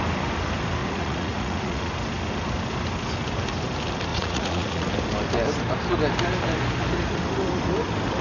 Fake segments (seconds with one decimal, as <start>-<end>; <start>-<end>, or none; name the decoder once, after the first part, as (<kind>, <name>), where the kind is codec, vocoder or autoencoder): 0.8-1.9 (vocoder, Vocos); 4.1-4.9